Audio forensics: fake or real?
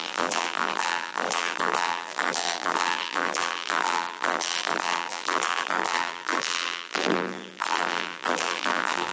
fake